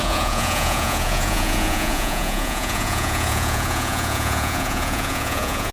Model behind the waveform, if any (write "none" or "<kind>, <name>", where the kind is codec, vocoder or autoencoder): vocoder, Vocos